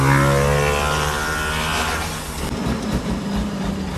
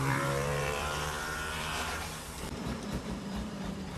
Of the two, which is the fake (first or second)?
second